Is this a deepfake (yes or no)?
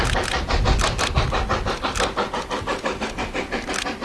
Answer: no